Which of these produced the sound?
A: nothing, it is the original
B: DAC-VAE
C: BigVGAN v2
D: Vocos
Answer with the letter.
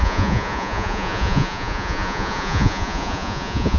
D